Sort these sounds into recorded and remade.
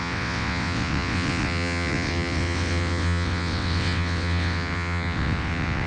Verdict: remade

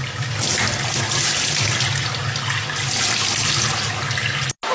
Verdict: recorded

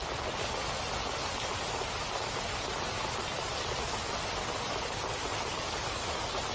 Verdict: recorded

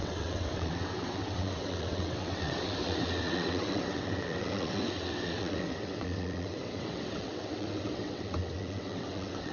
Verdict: remade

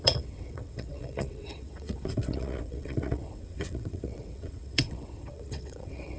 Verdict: remade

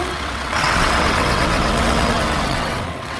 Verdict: remade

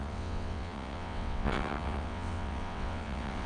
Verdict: remade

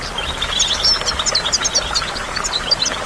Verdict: recorded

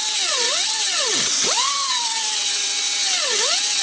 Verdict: remade